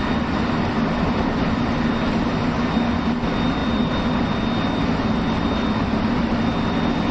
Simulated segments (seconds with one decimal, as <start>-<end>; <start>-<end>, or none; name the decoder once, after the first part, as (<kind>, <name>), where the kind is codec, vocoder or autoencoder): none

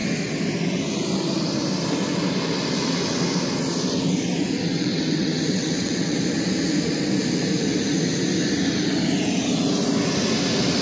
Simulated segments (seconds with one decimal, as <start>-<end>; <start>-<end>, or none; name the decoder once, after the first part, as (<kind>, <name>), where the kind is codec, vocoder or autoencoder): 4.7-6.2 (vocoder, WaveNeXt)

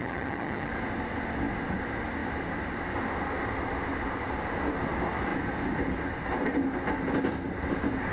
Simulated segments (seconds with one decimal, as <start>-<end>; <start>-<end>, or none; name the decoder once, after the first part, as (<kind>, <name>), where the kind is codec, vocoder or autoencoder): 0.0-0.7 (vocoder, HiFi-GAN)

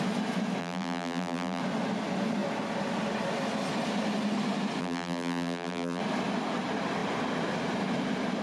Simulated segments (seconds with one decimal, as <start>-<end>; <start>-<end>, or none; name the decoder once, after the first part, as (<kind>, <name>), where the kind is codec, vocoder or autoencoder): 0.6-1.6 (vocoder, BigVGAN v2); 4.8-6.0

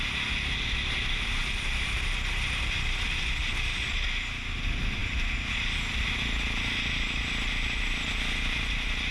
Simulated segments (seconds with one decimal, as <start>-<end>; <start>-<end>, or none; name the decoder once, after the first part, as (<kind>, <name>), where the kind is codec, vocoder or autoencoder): none

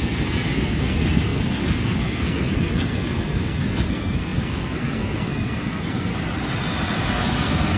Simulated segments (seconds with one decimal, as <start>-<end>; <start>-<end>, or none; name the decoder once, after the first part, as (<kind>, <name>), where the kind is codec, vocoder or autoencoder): 0.0-6.1 (codec, SNAC); 7.0-7.8

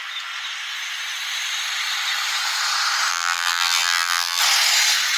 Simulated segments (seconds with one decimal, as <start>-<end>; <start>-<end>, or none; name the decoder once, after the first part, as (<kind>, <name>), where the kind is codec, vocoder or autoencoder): 3.1-4.4 (vocoder, BigVGAN v2)